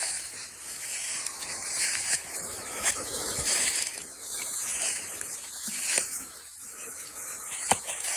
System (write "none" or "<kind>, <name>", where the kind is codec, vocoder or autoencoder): autoencoder, DAC-VAE